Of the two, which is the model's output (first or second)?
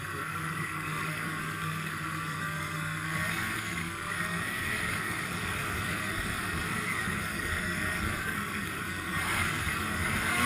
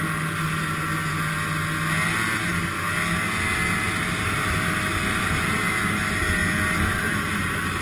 first